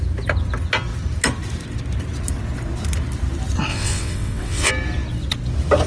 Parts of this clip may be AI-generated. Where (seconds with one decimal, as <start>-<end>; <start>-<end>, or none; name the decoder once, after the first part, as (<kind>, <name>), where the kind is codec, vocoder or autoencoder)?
3.7-4.7 (vocoder, WaveNeXt)